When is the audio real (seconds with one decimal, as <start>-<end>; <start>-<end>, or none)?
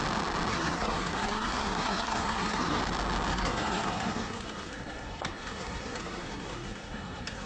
0.0-0.5; 2.8-3.3